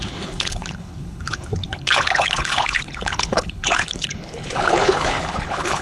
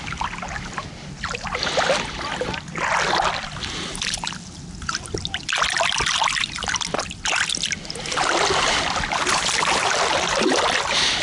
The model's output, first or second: first